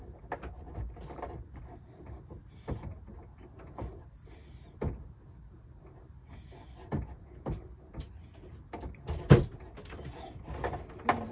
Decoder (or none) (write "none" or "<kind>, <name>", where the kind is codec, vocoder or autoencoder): none